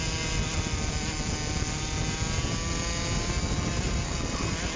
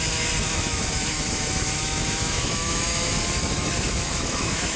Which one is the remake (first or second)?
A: second